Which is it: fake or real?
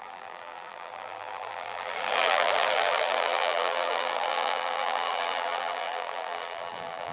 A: fake